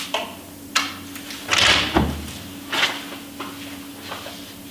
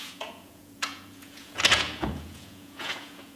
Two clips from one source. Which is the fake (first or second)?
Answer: second